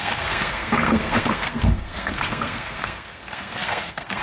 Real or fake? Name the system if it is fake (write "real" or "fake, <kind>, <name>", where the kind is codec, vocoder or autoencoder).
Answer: fake, codec, SNAC